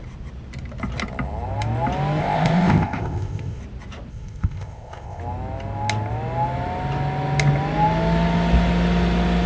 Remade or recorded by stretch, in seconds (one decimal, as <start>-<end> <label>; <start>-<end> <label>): 0.0-2.2 recorded; 2.2-3.6 remade; 3.6-4.1 recorded; 4.1-5.2 remade; 5.2-9.5 recorded